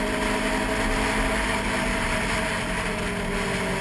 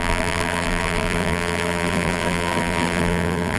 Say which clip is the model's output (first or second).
second